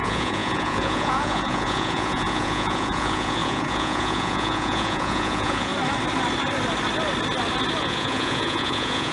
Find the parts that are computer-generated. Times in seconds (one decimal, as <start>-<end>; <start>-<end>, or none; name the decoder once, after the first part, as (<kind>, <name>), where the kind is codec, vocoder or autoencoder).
0.0-5.7 (vocoder, Vocos); 7.8-9.1